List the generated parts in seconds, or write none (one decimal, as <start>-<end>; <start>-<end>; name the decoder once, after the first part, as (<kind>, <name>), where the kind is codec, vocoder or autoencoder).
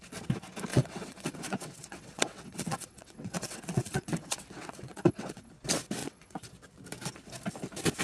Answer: 0.7-5.5 (vocoder, WaveNeXt); 6.0-6.5